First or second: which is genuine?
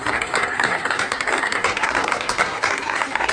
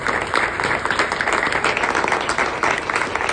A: second